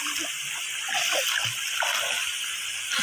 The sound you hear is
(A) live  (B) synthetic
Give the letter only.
A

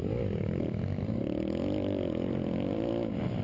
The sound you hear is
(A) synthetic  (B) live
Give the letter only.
B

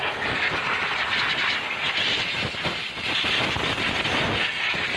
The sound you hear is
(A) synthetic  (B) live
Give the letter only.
B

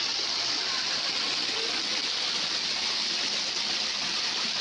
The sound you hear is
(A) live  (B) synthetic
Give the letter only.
A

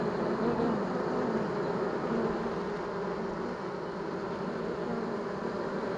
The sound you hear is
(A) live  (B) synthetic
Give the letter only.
A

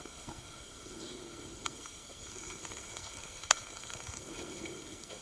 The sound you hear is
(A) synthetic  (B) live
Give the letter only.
A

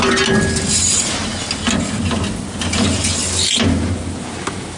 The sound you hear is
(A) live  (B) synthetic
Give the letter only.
A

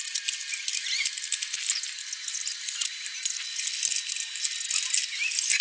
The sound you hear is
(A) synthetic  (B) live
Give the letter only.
B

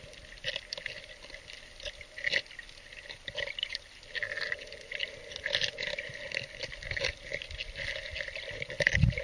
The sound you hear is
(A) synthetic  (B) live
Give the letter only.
B